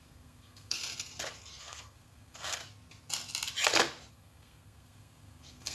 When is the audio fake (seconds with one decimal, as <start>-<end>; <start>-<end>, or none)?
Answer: 0.0-0.8; 1.6-2.6; 4.1-5.7